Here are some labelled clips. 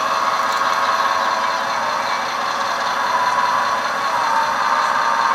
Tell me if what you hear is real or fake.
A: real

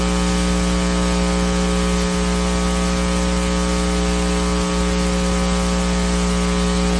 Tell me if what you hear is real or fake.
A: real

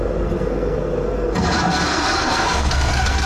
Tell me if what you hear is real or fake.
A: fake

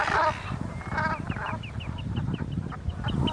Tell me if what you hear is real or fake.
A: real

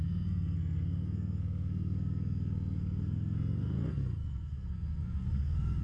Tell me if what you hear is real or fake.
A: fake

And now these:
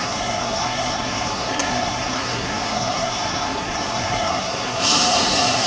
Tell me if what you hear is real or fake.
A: fake